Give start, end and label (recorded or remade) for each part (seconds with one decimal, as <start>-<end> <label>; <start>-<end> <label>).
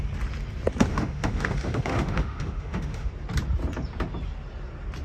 0.0-0.9 recorded; 0.9-3.1 remade; 3.1-5.0 recorded